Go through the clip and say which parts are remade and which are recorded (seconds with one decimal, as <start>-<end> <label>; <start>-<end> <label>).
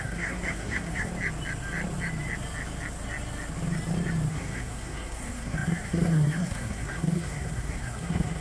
0.0-1.1 remade; 1.1-4.3 recorded; 4.3-8.4 remade